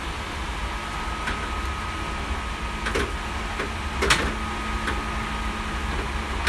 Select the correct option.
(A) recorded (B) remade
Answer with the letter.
A